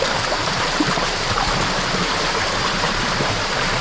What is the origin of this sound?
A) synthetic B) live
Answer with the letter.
A